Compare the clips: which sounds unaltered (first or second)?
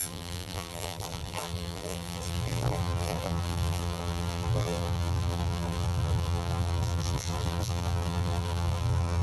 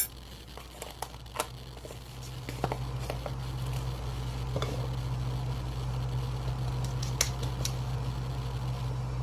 second